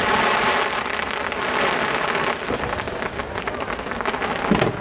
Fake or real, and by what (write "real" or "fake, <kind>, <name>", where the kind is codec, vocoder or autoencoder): real